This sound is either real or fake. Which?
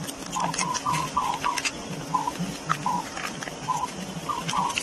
real